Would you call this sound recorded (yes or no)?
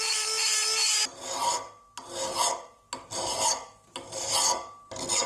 yes